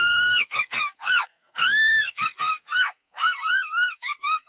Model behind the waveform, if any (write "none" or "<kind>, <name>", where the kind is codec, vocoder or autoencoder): codec, SNAC